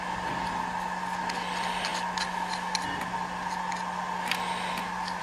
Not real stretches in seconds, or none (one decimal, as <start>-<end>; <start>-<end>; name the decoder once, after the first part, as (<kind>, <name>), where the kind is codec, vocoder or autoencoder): none